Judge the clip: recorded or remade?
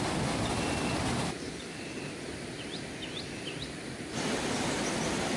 recorded